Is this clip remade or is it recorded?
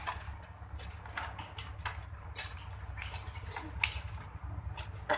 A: recorded